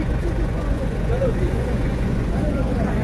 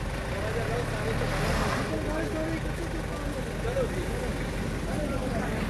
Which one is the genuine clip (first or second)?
second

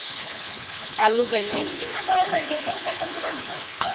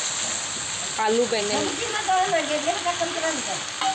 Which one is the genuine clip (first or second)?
second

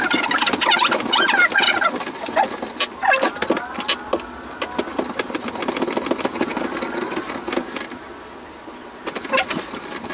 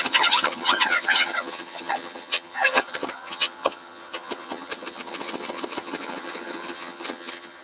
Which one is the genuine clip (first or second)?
first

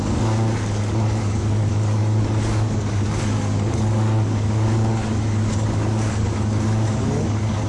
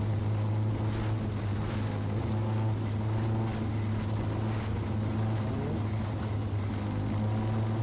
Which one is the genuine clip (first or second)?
second